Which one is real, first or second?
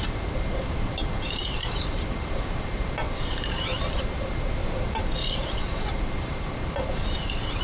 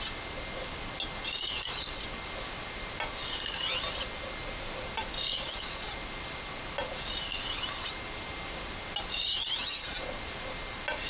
second